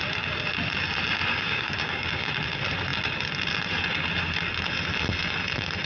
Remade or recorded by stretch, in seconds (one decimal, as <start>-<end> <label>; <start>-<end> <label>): 0.0-1.3 recorded; 1.3-2.3 remade; 2.3-5.9 recorded